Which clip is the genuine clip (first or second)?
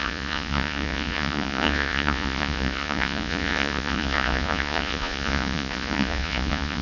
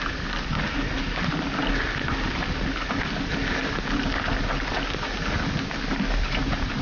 second